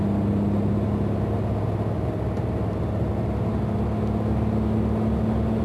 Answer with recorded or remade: recorded